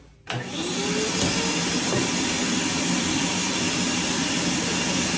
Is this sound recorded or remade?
recorded